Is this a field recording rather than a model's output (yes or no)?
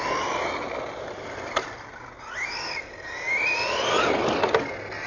yes